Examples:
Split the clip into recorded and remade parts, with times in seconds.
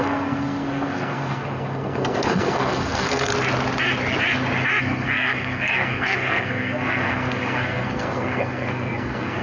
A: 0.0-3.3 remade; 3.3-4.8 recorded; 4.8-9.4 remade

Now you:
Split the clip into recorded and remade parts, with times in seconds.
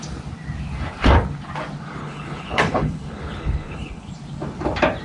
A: 0.0-2.0 recorded; 2.0-4.1 remade; 4.1-5.0 recorded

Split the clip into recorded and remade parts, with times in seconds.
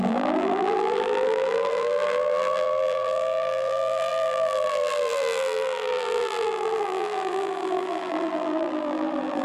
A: 0.0-9.4 remade